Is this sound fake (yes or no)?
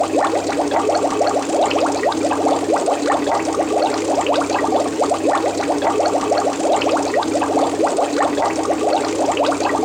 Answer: no